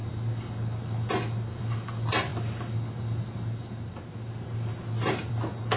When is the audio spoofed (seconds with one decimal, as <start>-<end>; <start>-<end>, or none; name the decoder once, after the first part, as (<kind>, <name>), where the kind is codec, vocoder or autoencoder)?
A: none